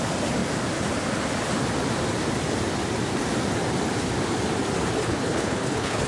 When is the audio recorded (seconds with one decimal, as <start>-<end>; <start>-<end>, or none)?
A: 0.0-5.0